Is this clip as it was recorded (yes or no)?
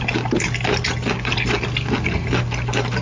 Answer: yes